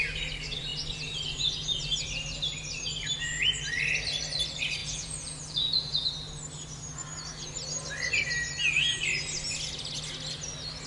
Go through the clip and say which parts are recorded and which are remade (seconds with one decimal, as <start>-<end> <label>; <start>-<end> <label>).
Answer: 0.0-4.8 recorded; 4.8-6.1 remade; 6.1-10.9 recorded